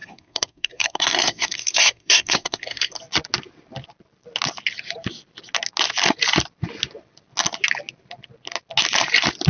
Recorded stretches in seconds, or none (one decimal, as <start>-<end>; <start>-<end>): 3.0-9.5